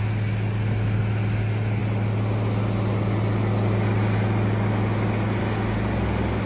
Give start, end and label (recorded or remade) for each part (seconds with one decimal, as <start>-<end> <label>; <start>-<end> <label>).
0.0-6.5 recorded

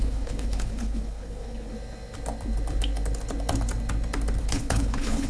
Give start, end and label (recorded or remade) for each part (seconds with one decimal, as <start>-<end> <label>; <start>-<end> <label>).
0.0-1.7 remade; 1.7-4.4 recorded; 4.4-5.3 remade